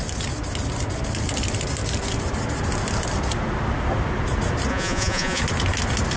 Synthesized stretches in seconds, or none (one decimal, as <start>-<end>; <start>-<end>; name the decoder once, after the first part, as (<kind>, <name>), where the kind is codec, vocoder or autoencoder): 4.7-5.4 (vocoder, Vocos)